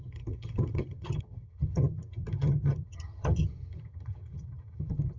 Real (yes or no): no